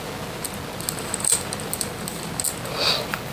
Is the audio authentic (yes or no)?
yes